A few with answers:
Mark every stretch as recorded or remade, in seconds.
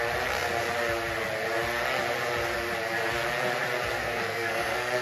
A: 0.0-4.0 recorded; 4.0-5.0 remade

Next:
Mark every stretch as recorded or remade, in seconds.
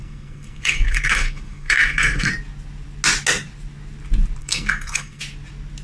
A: 0.0-2.3 remade; 2.3-4.4 recorded; 4.4-5.2 remade; 5.2-5.8 recorded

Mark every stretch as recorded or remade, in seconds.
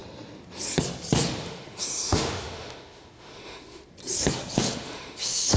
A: 0.0-1.4 recorded; 1.4-3.9 remade; 3.9-4.6 recorded; 4.6-5.6 remade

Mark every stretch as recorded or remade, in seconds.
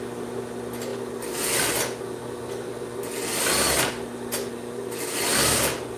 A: 0.0-6.0 recorded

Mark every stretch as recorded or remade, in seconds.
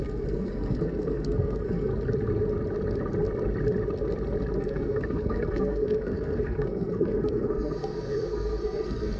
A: 0.0-1.9 remade; 1.9-4.6 recorded; 4.6-9.2 remade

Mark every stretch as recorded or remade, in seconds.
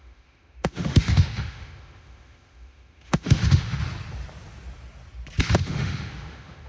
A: 0.0-3.8 remade; 3.8-5.4 recorded; 5.4-6.7 remade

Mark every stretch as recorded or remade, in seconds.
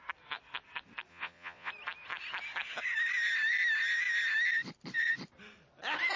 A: 0.0-1.1 recorded; 1.1-1.7 remade; 1.7-6.2 recorded